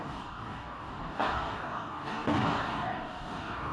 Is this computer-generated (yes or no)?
yes